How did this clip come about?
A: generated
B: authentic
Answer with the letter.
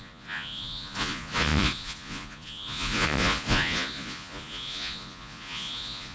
A